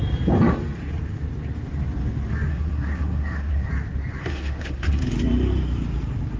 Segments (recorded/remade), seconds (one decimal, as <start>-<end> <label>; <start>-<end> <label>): 0.0-2.5 recorded; 2.5-3.7 remade; 3.7-4.2 recorded; 4.2-5.0 remade; 5.0-6.4 recorded